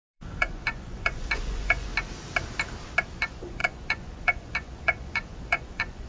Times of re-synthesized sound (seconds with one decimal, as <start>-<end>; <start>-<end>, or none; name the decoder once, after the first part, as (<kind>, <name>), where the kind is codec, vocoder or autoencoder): 0.0-1.9 (vocoder, Vocos); 3.1-6.1